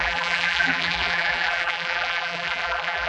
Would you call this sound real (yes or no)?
no